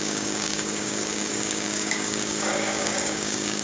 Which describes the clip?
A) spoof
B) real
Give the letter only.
A